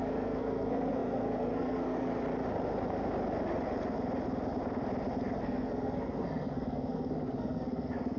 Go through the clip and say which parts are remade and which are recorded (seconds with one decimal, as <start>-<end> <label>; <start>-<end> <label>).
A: 0.0-2.2 remade; 2.2-5.4 recorded; 5.4-8.2 remade